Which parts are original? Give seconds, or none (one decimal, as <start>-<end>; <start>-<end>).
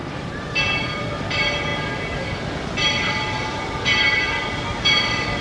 1.7-4.9